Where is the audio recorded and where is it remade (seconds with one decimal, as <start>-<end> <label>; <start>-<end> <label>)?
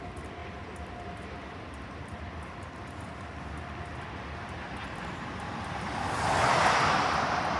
0.0-7.6 recorded